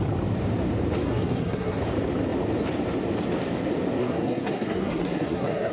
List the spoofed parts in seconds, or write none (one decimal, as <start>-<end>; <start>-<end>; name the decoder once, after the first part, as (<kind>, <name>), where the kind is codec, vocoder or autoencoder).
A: 1.0-1.8 (codec, SNAC); 4.0-5.7